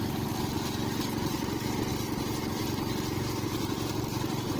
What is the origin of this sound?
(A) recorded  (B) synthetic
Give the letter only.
A